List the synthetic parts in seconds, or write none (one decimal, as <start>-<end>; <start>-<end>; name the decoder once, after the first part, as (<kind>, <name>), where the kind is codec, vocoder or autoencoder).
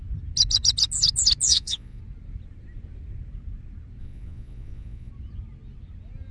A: 1.5-2.0 (vocoder, Vocos); 4.0-5.1